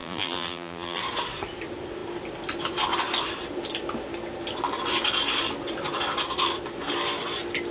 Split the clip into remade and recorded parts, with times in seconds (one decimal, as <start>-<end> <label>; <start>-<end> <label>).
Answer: 0.0-1.0 remade; 1.0-7.7 recorded